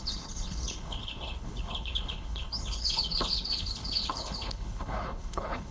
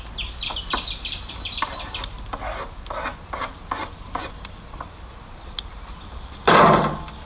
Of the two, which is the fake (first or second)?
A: first